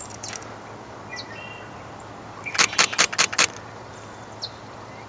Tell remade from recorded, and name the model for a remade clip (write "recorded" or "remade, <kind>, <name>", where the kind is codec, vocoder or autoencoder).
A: recorded